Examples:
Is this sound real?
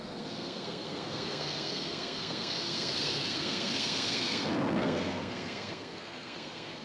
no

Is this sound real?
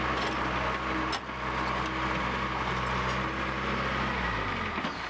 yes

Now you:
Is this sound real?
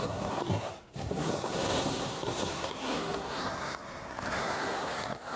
no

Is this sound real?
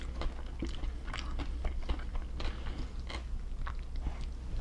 yes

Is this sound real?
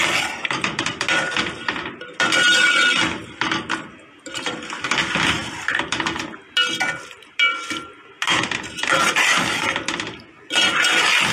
yes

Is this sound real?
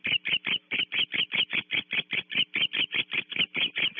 yes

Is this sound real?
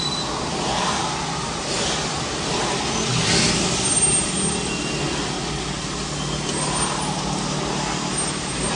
yes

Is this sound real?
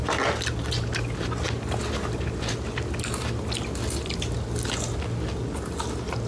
yes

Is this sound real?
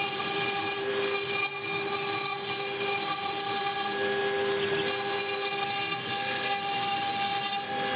yes